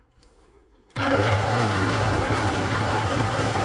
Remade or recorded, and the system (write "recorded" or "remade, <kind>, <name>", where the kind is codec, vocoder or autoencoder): remade, codec, SNAC